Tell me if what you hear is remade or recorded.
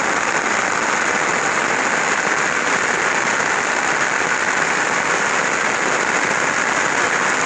recorded